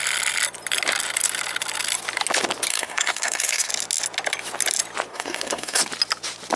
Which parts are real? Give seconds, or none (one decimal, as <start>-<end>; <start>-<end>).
0.0-2.7; 3.7-5.1; 5.8-6.6